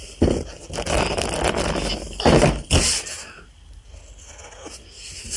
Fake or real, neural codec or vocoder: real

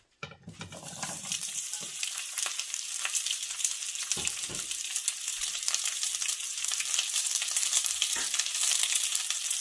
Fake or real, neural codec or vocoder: fake, vocoder, BigVGAN v2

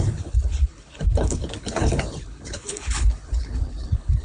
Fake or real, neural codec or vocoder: fake, codec, HILCodec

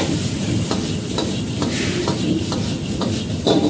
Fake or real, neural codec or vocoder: real